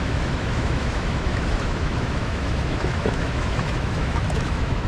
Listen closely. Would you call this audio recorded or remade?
remade